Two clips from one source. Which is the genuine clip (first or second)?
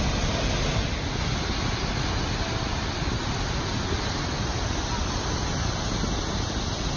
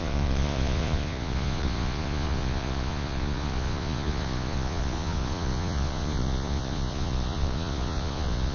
first